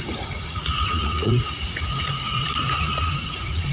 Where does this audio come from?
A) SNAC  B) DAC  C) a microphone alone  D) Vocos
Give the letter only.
D